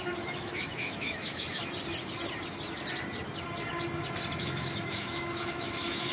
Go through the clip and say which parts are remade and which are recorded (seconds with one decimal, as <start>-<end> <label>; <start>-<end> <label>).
0.0-1.6 remade; 1.6-4.4 recorded; 4.4-6.1 remade